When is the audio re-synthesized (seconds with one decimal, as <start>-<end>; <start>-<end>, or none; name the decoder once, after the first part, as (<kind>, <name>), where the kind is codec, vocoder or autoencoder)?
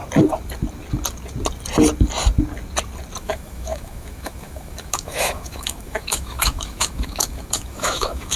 3.2-8.4 (autoencoder, DAC-VAE)